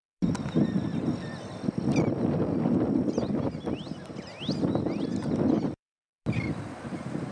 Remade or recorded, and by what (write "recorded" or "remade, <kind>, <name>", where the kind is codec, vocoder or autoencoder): recorded